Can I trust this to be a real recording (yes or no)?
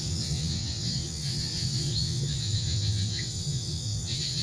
no